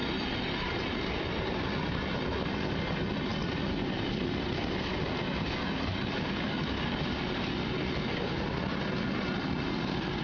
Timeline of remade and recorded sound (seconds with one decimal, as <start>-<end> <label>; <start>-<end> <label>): 0.0-10.2 recorded